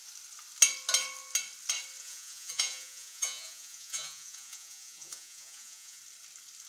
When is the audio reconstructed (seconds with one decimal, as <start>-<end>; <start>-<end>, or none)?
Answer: 2.0-6.0